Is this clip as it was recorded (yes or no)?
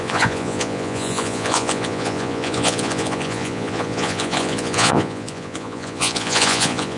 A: no